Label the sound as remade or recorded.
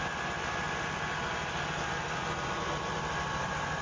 remade